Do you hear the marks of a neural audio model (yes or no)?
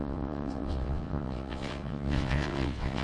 yes